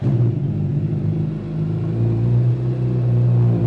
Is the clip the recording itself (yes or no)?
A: yes